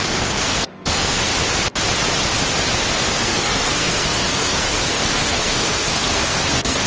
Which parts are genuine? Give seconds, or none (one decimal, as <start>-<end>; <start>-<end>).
1.3-3.2